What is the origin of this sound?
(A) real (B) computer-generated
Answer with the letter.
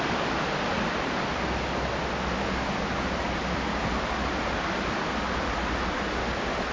A